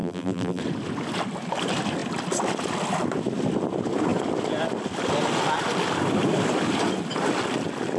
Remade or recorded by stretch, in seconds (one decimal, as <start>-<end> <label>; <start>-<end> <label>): 0.0-0.6 remade; 0.6-8.0 recorded